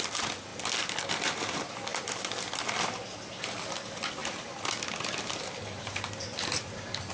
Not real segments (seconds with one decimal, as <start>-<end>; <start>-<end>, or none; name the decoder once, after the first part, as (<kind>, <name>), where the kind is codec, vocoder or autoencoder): none

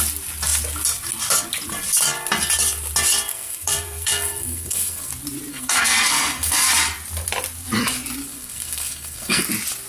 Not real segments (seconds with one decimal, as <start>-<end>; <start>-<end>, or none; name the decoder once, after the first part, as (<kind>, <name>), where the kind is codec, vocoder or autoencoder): 3.3-5.1 (codec, SNAC); 5.5-6.7; 8.3-9.4

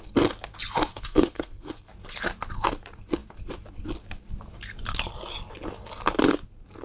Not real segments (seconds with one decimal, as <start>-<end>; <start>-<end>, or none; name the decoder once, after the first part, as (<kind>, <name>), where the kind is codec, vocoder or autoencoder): 0.9-1.9 (codec, SNAC)

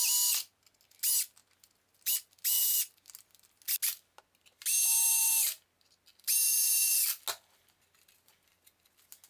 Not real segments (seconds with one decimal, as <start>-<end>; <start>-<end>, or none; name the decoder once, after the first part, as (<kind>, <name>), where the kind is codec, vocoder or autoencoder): none

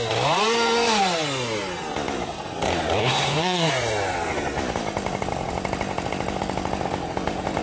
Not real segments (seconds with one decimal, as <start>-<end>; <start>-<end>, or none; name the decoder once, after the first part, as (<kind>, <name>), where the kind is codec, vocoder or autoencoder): 3.0-3.7 (codec, SNAC)

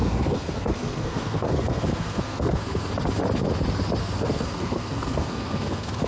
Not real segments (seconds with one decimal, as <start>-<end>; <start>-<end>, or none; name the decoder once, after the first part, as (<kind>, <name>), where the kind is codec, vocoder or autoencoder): 0.0-2.9 (codec, SNAC); 4.0-6.1